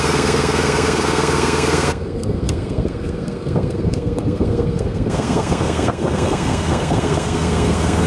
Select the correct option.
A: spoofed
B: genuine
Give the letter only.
A